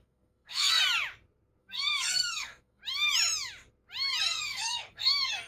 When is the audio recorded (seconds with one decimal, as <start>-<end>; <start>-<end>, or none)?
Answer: 0.8-1.6; 2.8-4.2